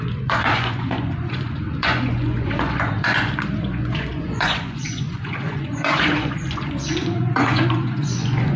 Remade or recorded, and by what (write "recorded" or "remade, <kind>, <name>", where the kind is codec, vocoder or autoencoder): remade, vocoder, Vocos